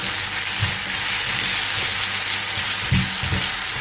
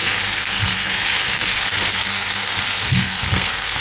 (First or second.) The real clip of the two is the first